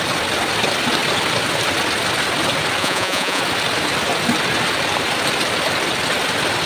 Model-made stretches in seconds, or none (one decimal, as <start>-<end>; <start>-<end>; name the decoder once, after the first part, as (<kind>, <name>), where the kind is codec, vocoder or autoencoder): 2.8-3.4 (vocoder, Vocos)